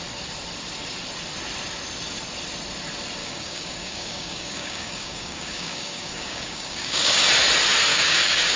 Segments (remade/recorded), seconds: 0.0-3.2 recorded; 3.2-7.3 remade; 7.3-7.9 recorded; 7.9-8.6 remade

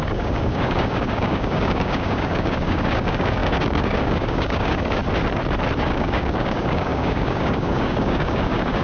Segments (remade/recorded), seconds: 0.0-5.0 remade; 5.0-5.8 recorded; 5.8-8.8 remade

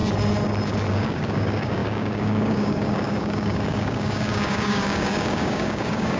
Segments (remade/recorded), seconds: 0.0-0.9 recorded; 0.9-6.2 remade

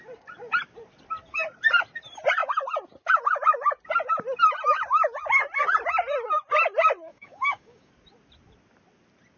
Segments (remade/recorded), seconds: 0.0-7.1 recorded; 7.1-7.9 remade; 7.9-9.4 recorded